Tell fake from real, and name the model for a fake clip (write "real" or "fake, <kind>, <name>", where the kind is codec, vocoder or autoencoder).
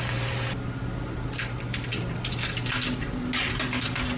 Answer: real